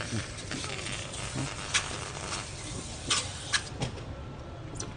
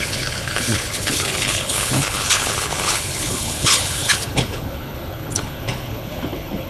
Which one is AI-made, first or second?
second